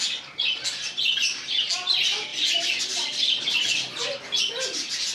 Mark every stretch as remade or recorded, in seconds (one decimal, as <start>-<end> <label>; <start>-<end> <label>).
0.0-5.1 recorded